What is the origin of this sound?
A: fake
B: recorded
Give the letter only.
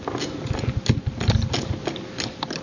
B